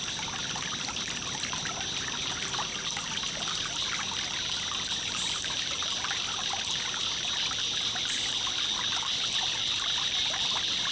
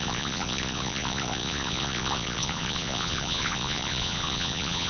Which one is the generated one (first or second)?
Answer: second